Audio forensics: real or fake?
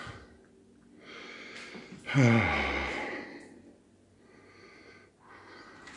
real